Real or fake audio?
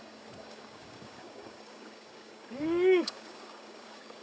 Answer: fake